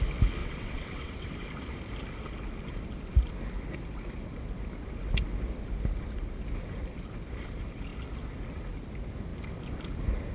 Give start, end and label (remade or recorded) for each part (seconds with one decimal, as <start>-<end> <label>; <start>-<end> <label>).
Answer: 0.0-0.4 recorded; 0.4-1.3 remade; 1.3-10.3 recorded